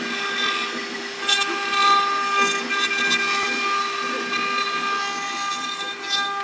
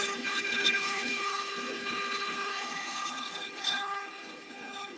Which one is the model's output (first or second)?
second